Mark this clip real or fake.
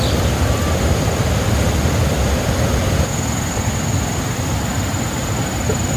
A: real